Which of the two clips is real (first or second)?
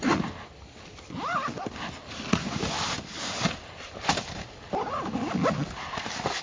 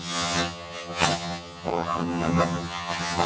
first